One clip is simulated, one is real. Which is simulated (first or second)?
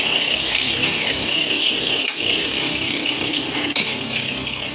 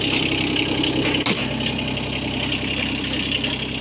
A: first